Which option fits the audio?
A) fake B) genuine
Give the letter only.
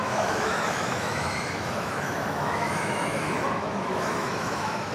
A